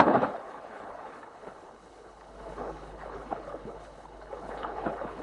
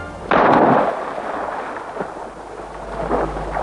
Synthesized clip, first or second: first